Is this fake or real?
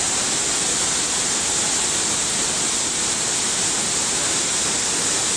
real